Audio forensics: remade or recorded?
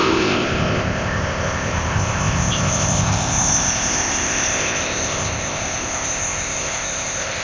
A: remade